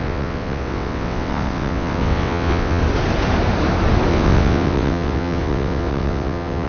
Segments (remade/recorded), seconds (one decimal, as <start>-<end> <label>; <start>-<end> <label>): 0.0-2.8 remade; 2.8-4.1 recorded; 4.1-6.7 remade